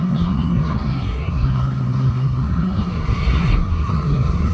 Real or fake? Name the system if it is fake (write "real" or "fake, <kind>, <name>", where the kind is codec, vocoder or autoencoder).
fake, codec, SNAC